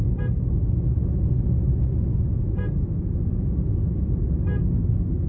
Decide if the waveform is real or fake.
real